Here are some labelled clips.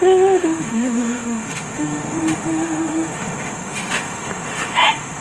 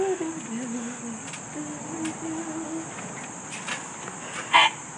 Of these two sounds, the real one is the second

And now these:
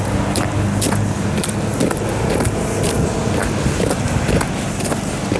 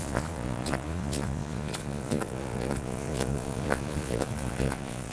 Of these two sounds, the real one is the first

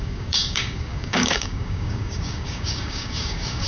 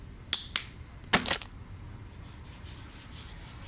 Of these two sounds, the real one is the second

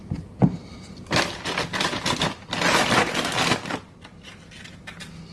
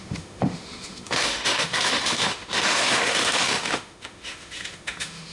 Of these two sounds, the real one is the first